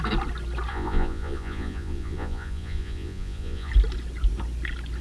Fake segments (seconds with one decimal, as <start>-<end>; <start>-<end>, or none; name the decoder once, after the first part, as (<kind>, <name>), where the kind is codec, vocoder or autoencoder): 0.7-3.7 (vocoder, Vocos)